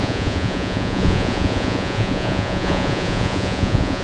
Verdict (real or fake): fake